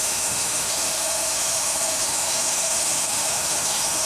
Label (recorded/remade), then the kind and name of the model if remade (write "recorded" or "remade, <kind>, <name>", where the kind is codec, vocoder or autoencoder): remade, autoencoder, DAC-VAE